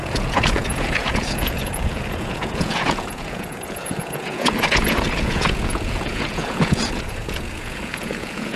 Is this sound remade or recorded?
remade